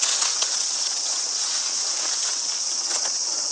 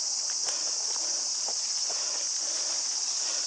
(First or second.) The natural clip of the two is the second